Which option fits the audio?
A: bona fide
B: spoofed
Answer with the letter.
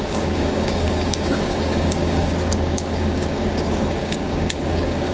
B